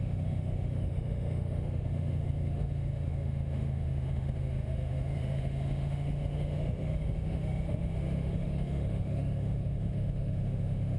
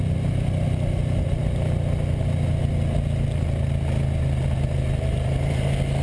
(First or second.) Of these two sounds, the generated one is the first